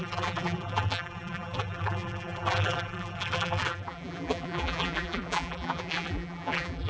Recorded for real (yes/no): no